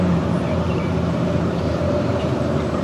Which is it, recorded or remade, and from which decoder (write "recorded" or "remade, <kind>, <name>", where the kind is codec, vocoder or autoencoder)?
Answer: remade, vocoder, BigVGAN v2